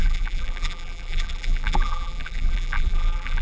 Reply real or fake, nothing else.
fake